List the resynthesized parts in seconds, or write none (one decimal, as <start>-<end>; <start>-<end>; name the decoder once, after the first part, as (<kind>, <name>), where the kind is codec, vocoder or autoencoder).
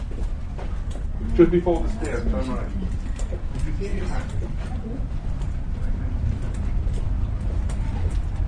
3.9-6.4 (vocoder, BigVGAN v2)